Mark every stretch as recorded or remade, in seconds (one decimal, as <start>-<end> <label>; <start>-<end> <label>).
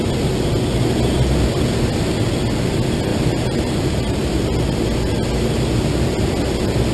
0.0-3.1 recorded; 3.1-4.3 remade; 4.3-6.9 recorded